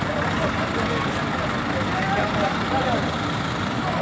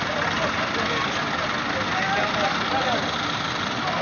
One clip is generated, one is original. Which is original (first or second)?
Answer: second